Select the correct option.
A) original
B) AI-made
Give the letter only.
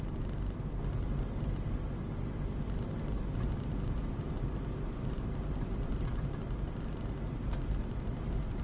A